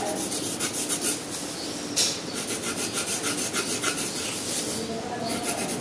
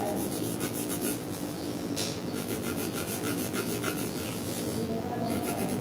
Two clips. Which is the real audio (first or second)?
first